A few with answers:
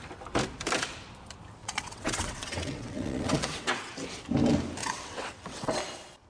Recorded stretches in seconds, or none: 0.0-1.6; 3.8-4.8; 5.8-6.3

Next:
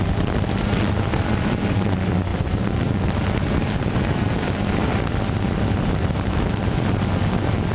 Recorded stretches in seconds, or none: 0.0-7.7